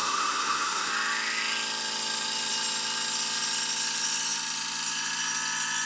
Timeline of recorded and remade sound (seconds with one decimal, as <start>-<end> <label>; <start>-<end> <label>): 0.0-0.9 remade; 0.9-5.9 recorded